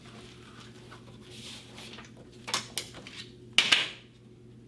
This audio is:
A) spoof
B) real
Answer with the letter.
B